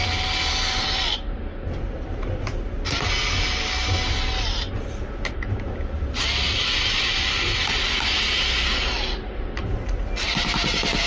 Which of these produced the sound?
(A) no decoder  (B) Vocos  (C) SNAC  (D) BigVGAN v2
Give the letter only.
A